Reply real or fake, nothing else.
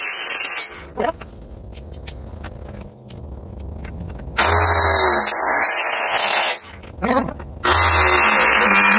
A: real